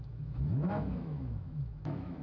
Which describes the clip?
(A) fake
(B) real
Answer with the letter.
A